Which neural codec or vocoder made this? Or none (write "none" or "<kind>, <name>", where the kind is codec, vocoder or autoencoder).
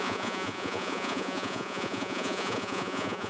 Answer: vocoder, Vocos